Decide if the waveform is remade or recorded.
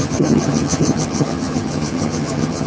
remade